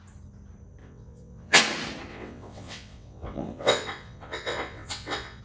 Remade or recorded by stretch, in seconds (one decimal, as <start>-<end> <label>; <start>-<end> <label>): 0.0-0.8 recorded; 0.8-1.6 remade; 1.6-2.1 recorded; 2.1-5.4 remade